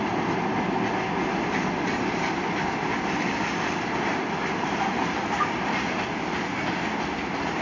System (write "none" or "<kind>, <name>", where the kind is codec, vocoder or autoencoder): none